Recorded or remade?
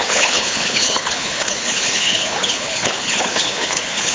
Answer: remade